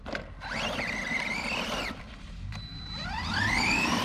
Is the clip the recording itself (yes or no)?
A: no